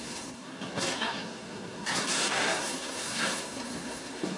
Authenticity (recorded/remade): remade